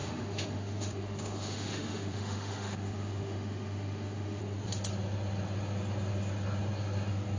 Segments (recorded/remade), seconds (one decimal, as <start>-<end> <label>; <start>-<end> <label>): 0.0-4.4 remade; 4.4-7.4 recorded